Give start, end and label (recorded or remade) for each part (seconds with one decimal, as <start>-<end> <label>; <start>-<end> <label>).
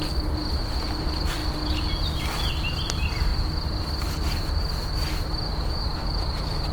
0.0-0.4 recorded; 0.4-0.9 remade; 0.9-6.7 recorded